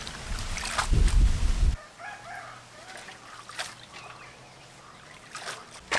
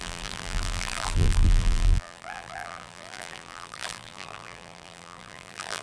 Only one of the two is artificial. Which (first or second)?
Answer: second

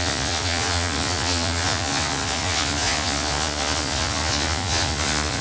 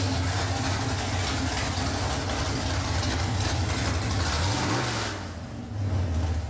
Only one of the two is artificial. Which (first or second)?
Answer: first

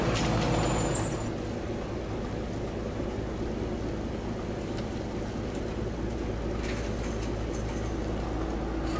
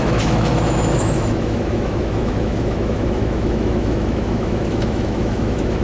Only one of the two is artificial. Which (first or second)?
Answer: second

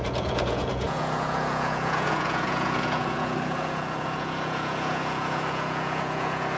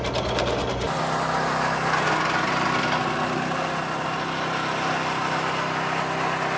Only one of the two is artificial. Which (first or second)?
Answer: first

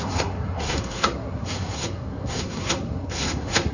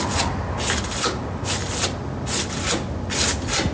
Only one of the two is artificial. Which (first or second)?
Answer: first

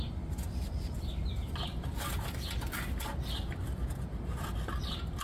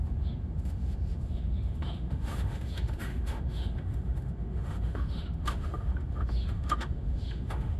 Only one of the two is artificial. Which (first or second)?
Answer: second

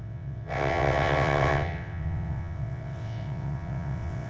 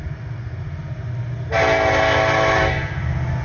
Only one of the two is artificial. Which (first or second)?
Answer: first